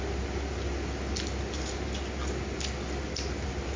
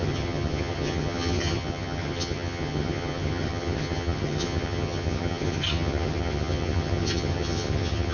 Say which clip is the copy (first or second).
second